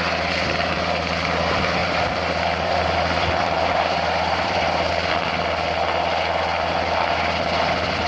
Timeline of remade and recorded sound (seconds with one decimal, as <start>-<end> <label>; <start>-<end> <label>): 0.0-1.8 recorded; 1.8-5.4 remade; 5.4-8.1 recorded